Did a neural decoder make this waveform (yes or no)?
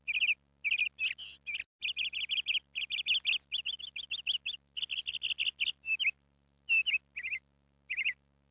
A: no